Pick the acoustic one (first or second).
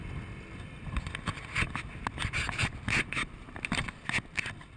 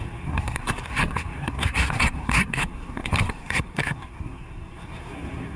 first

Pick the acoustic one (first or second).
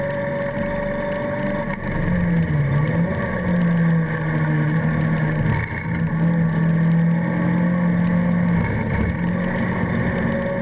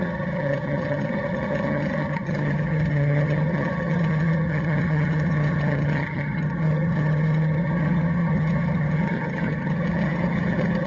first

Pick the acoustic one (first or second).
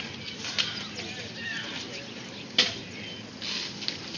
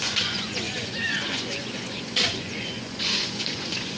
first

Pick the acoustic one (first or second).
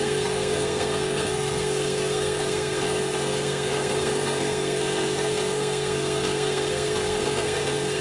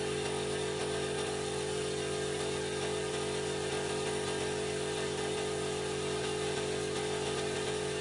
second